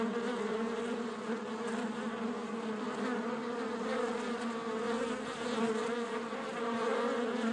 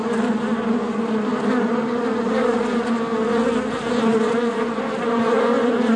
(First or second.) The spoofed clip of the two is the second